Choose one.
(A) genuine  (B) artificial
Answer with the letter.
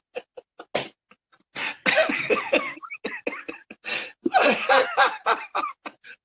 A